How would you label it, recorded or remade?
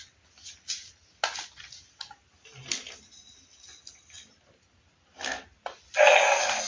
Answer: recorded